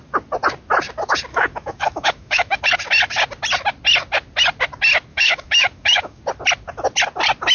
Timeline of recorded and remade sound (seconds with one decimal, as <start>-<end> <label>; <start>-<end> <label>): 0.0-1.3 recorded; 1.3-2.6 remade; 2.6-5.1 recorded; 5.1-6.2 remade; 6.2-7.5 recorded